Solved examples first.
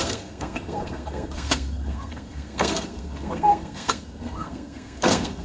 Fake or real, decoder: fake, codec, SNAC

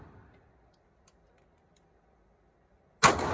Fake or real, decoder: real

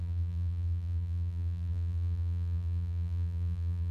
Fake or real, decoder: fake, vocoder, BigVGAN v2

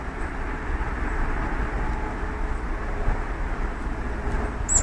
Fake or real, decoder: real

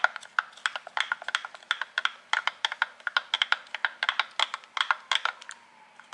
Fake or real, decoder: real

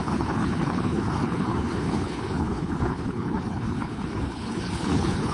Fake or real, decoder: fake, codec, HILCodec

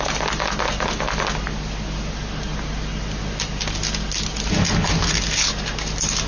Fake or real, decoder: real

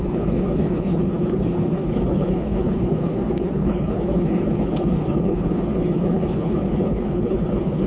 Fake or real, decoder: fake, codec, HILCodec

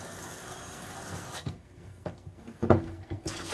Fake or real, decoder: fake, codec, SNAC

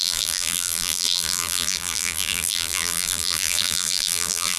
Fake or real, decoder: fake, vocoder, BigVGAN v2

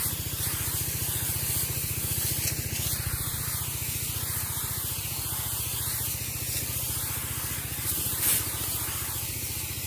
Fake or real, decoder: real